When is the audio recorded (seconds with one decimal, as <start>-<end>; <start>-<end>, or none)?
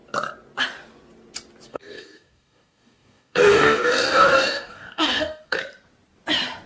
0.0-1.7; 5.6-6.7